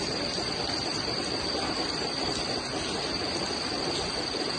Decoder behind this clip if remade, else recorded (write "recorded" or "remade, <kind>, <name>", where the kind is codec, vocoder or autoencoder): recorded